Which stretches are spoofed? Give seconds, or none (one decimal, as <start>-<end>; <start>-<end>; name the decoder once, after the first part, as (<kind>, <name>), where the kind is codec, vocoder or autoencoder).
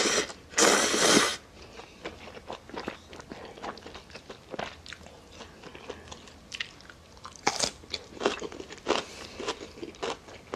none